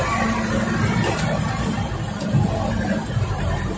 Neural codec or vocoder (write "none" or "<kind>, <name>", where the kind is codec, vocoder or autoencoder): none